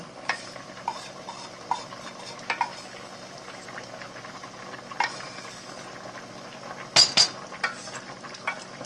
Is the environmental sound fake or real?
real